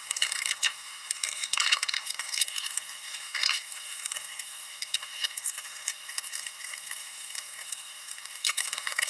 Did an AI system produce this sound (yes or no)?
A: yes